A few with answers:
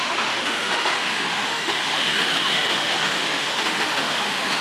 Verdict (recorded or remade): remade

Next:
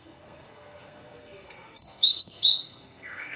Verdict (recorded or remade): remade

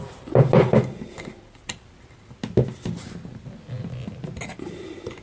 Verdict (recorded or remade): recorded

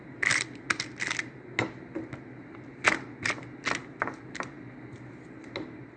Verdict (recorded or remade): recorded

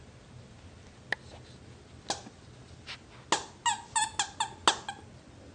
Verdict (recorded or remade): recorded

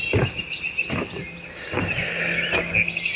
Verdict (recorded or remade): recorded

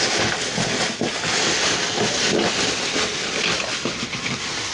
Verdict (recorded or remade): recorded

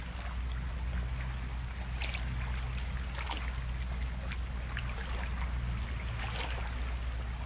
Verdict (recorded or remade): recorded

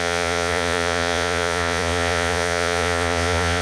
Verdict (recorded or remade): remade